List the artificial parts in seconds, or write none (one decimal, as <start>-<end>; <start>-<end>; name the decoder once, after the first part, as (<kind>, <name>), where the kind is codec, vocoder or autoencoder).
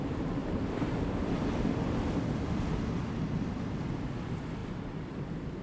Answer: none